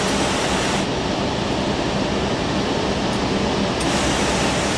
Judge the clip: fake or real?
real